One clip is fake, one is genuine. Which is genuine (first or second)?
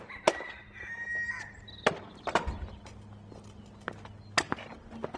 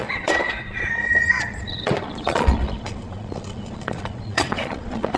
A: first